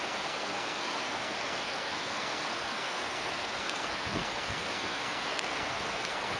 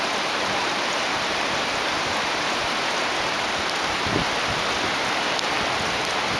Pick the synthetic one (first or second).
first